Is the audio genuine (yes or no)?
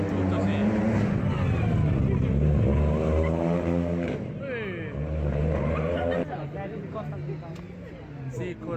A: yes